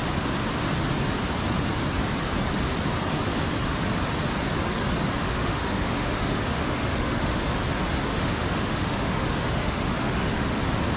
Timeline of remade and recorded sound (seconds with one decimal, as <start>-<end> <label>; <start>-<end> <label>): 0.0-5.2 recorded; 5.2-7.4 remade; 7.4-8.1 recorded; 8.1-10.6 remade; 10.6-11.0 recorded